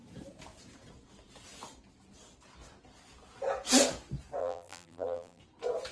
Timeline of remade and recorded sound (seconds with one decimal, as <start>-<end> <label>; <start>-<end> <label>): 0.0-4.4 recorded; 4.4-5.4 remade; 5.4-5.9 recorded